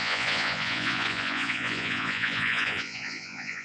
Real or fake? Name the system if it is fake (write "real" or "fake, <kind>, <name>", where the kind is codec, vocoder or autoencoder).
fake, vocoder, Vocos